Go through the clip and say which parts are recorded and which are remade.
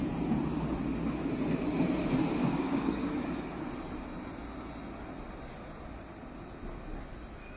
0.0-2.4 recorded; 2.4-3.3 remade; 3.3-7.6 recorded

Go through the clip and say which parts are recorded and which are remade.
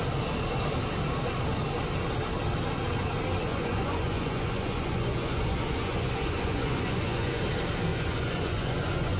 0.0-3.5 recorded; 3.5-7.4 remade; 7.4-7.9 recorded; 7.9-9.2 remade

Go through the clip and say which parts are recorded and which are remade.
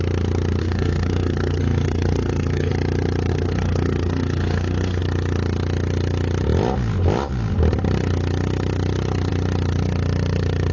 0.0-0.6 recorded; 0.6-2.7 remade; 2.7-3.3 recorded; 3.3-5.0 remade; 5.0-10.7 recorded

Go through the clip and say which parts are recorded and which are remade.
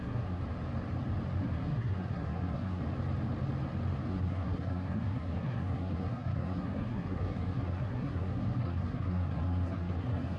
0.0-0.4 remade; 0.4-1.4 recorded; 1.4-2.8 remade; 2.8-4.1 recorded; 4.1-10.4 remade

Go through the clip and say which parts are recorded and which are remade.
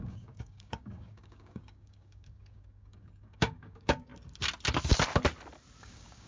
0.0-4.1 remade; 4.1-5.8 recorded; 5.8-6.3 remade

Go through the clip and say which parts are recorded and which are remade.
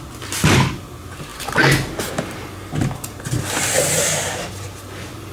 0.0-5.3 recorded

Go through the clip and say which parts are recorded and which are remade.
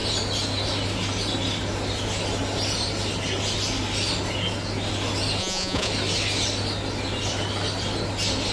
0.0-5.4 recorded; 5.4-5.9 remade; 5.9-8.5 recorded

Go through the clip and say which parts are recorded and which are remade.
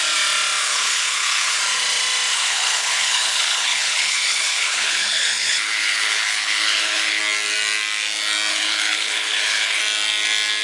0.0-0.6 recorded; 0.6-1.6 remade; 1.6-2.3 recorded; 2.3-7.2 remade; 7.2-8.5 recorded; 8.5-9.8 remade; 9.8-10.6 recorded